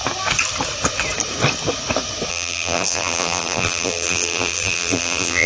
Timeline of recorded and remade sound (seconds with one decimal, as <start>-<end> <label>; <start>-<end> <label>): 0.0-2.3 recorded; 2.3-5.5 remade